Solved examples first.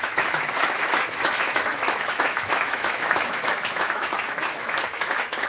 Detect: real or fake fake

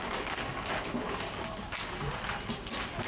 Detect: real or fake real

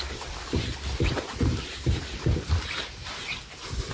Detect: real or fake real